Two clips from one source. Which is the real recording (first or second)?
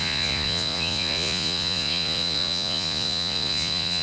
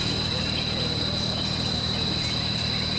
second